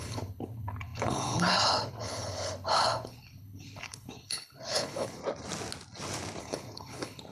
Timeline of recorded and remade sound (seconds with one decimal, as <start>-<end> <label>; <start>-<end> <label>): 0.0-5.2 remade; 5.2-6.4 recorded; 6.4-7.3 remade

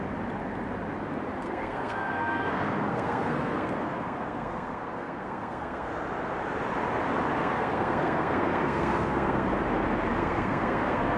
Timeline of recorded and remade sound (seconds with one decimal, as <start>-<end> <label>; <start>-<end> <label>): 0.0-1.4 recorded; 1.4-5.9 remade; 5.9-7.4 recorded; 7.4-9.6 remade; 9.6-10.2 recorded; 10.2-11.2 remade

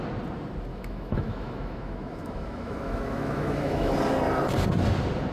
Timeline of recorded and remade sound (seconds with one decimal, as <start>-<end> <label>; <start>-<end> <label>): 0.0-0.7 recorded; 0.7-3.9 remade; 3.9-5.3 recorded

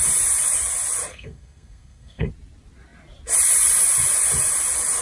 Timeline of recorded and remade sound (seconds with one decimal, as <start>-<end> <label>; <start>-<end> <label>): 0.0-1.1 recorded; 1.1-2.3 remade; 2.3-5.0 recorded